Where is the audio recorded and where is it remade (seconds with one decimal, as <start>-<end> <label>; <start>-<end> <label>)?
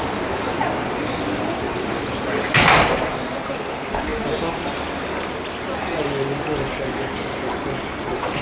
0.0-8.4 recorded